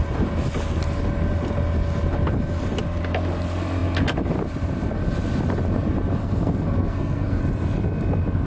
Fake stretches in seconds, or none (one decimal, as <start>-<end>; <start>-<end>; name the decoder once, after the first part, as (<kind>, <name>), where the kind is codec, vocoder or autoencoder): 6.2-7.4 (codec, SNAC)